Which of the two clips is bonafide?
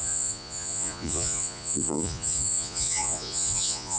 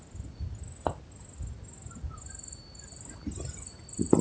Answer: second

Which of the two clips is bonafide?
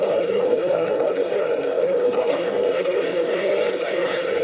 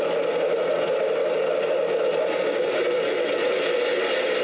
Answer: second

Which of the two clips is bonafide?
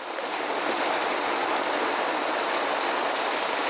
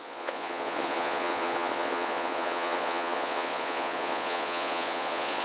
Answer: first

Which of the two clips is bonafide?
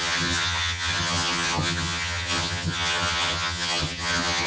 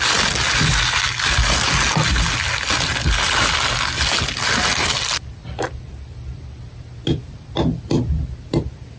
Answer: second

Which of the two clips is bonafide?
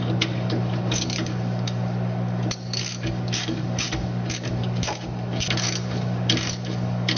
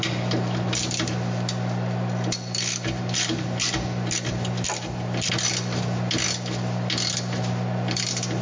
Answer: second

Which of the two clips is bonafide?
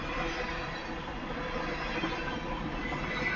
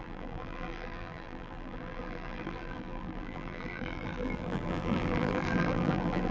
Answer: first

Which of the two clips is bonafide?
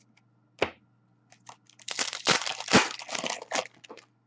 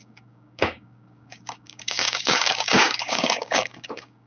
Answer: first